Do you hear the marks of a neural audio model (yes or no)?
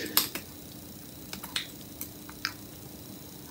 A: no